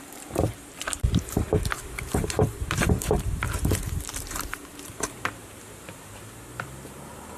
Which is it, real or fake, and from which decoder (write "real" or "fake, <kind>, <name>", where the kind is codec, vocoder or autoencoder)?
fake, vocoder, BigVGAN v2